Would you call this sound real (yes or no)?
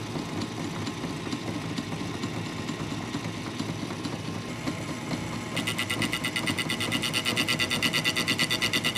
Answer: yes